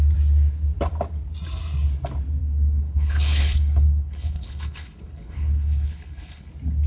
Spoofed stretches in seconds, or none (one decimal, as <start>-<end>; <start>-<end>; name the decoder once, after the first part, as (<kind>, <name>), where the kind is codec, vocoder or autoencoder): 2.4-6.5 (codec, HILCodec)